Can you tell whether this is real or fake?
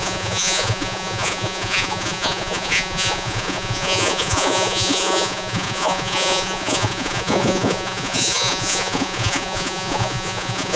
fake